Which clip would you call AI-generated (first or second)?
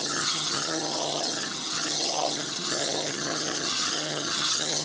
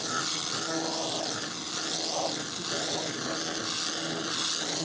first